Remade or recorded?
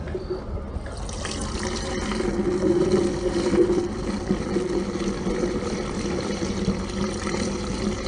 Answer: recorded